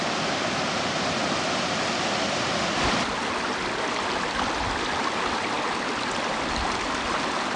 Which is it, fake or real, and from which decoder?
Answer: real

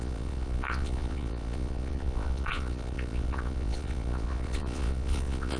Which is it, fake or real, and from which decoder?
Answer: fake, vocoder, Vocos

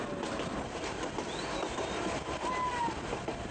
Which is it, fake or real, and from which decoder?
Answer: real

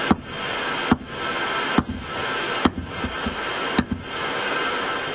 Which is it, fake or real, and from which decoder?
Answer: real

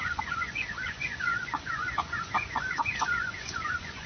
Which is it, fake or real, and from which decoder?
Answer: fake, vocoder, Vocos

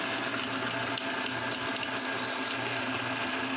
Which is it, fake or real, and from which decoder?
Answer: real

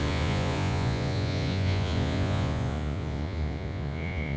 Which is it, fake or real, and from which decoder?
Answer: fake, vocoder, Vocos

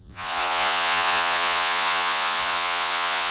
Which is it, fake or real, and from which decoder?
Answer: fake, vocoder, Vocos